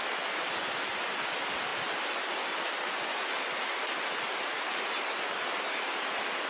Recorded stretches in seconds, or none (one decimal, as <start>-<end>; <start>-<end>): 0.0-6.5